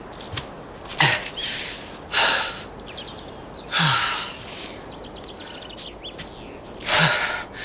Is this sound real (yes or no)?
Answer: yes